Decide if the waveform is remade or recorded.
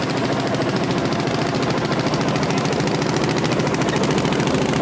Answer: recorded